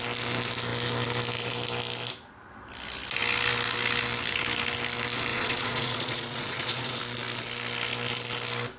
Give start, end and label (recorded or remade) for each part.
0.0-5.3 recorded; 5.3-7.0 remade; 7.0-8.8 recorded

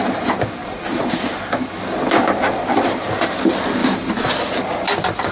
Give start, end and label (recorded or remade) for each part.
0.0-0.6 recorded; 0.6-1.4 remade; 1.4-5.3 recorded

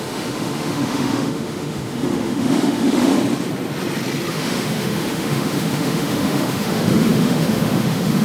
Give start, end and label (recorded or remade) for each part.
0.0-3.1 remade; 3.1-4.3 recorded; 4.3-8.2 remade